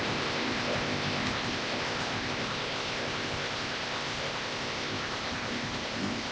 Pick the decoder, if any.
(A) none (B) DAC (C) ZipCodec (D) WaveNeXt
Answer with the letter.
C